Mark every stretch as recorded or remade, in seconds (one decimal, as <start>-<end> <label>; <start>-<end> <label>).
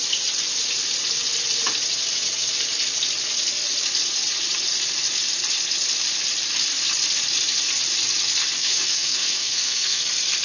0.0-8.6 recorded; 8.6-10.0 remade; 10.0-10.4 recorded